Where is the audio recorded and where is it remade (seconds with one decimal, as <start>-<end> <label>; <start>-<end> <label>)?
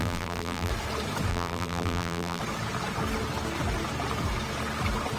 0.0-0.7 remade; 0.7-1.3 recorded; 1.3-2.4 remade; 2.4-5.2 recorded